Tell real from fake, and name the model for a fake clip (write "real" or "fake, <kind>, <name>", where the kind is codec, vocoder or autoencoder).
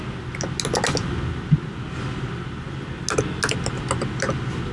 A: real